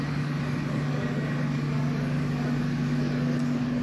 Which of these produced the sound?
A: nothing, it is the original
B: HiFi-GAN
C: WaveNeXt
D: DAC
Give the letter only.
D